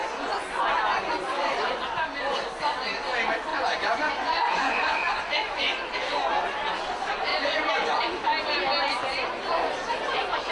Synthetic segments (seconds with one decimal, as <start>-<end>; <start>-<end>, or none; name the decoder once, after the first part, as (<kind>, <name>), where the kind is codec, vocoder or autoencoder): 0.0-0.6 (vocoder, Vocos); 3.5-5.8; 7.3-8.0